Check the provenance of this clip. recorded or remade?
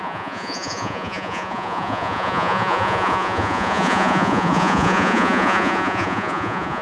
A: remade